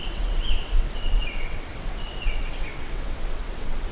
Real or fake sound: fake